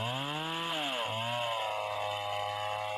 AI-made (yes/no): no